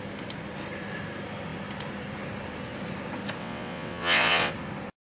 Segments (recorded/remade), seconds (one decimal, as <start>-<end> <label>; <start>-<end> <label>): 0.0-3.4 recorded; 3.4-4.5 remade; 4.5-5.0 recorded